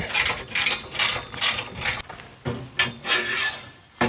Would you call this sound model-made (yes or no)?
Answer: no